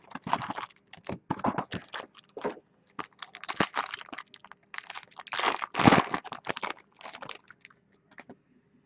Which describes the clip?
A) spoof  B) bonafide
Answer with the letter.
B